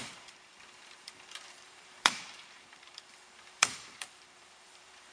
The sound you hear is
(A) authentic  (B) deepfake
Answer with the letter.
B